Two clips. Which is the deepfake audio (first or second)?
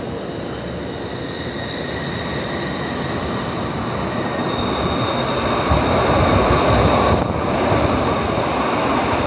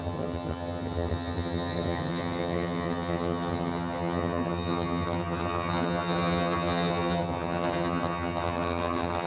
second